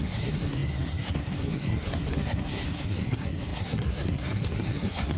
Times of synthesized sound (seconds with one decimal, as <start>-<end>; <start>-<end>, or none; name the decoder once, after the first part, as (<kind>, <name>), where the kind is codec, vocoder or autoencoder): 0.0-5.2 (codec, SNAC)